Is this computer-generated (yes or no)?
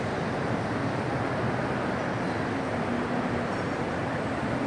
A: no